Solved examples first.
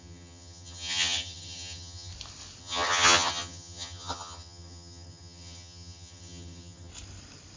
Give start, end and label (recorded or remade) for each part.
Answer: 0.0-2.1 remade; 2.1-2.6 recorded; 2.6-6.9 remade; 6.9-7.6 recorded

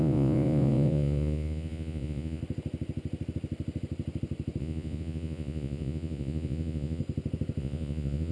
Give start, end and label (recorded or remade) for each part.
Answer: 0.0-2.4 remade; 2.4-4.6 recorded; 4.6-7.0 remade; 7.0-7.6 recorded; 7.6-8.3 remade

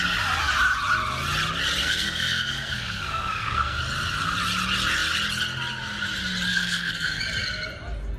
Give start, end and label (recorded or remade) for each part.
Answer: 0.0-1.8 recorded; 1.8-3.8 remade; 3.8-6.5 recorded; 6.5-7.2 remade; 7.2-8.2 recorded

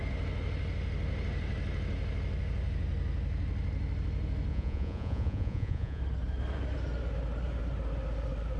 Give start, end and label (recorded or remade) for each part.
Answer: 0.0-4.5 recorded; 4.5-6.0 remade; 6.0-8.6 recorded